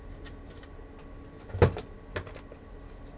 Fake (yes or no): no